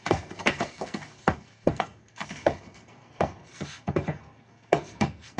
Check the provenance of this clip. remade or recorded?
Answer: remade